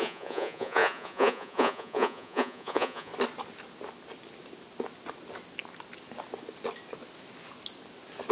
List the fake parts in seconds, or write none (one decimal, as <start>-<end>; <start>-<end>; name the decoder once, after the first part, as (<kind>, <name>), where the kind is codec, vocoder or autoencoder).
0.0-3.1 (vocoder, Vocos)